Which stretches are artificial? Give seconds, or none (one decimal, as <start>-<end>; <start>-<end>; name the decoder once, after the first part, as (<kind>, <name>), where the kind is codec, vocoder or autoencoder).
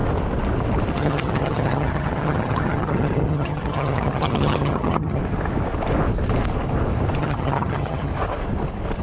0.9-5.2 (vocoder, HiFi-GAN); 7.2-8.1